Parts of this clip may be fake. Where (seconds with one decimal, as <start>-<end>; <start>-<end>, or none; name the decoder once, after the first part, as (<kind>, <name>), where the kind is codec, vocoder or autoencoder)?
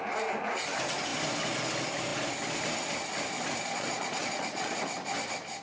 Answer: 3.6-4.8 (vocoder, Vocos)